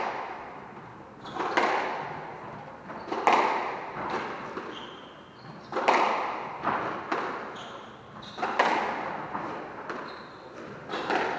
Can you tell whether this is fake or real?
real